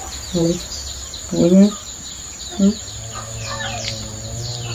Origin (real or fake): real